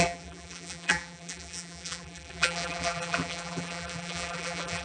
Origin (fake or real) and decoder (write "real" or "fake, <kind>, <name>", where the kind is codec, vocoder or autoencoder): fake, vocoder, BigVGAN v2